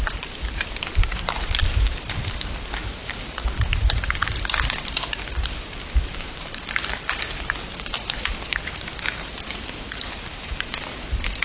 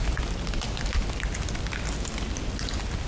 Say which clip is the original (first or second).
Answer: second